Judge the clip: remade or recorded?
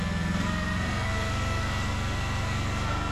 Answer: remade